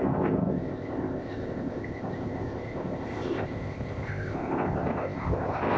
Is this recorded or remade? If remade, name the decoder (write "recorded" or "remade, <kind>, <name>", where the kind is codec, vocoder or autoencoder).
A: remade, codec, ZipCodec